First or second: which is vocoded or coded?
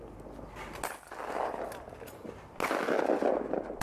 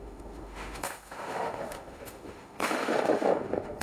second